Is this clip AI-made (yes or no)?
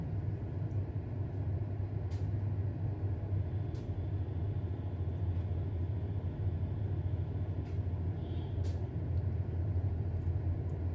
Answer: no